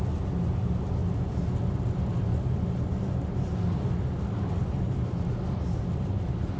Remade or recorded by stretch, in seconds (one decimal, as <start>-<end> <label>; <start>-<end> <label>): 0.0-6.6 recorded